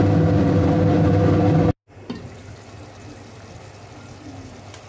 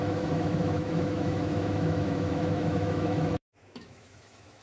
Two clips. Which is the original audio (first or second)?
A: first